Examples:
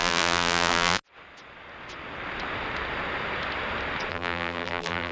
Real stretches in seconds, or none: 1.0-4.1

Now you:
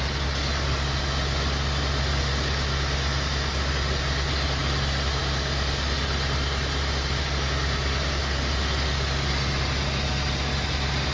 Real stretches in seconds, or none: 0.0-11.1

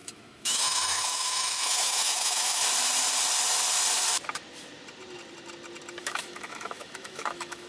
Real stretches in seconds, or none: 2.6-6.0

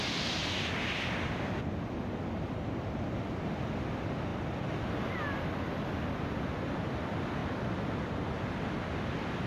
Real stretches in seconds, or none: 0.0-9.5

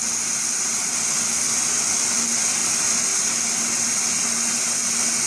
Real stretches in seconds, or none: 0.0-5.3

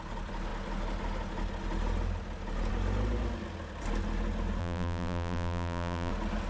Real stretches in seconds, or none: 0.0-4.6; 6.1-6.5

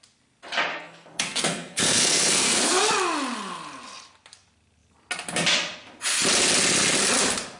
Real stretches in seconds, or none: 0.0-0.7; 2.8-7.6

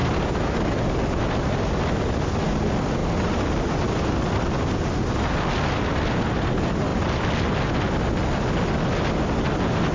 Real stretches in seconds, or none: 0.0-9.9